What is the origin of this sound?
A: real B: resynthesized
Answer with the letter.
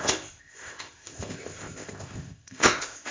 B